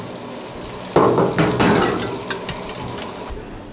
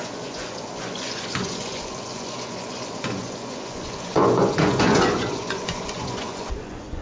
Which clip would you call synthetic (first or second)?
second